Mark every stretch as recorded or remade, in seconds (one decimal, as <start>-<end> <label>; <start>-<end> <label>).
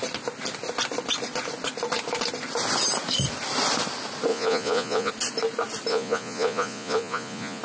0.0-4.3 recorded; 4.3-5.1 remade; 5.1-5.9 recorded; 5.9-7.6 remade